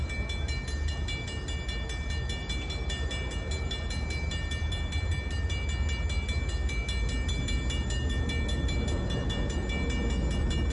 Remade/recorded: recorded